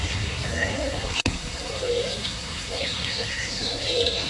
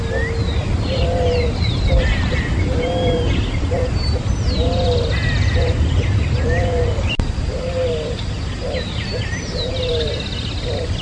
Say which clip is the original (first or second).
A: second